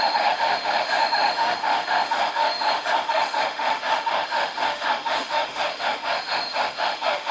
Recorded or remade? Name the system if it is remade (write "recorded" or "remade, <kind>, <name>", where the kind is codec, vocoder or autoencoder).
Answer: remade, autoencoder, DAC-VAE